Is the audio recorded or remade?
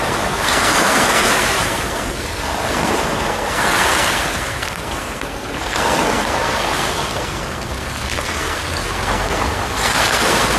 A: remade